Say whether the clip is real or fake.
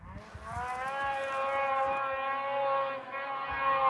real